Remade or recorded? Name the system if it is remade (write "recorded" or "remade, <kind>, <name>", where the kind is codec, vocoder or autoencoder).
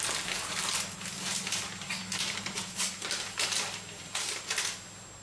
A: recorded